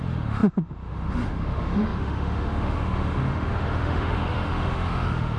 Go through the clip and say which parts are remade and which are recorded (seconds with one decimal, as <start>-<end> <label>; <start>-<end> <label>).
0.0-5.4 remade